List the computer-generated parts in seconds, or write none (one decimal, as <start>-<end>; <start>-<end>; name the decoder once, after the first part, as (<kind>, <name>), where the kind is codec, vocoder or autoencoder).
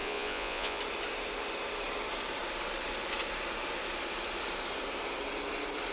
0.0-0.8 (vocoder, Vocos)